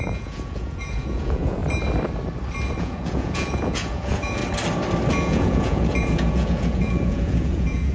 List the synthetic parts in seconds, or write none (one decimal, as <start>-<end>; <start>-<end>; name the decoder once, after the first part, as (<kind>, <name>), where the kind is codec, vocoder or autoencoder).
0.0-1.6 (vocoder, Vocos); 2.8-4.4; 5.1-7.9